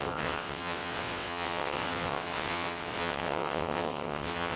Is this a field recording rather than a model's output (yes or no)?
no